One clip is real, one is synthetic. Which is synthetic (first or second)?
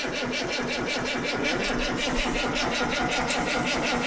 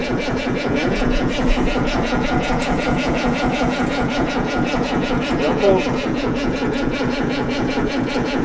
second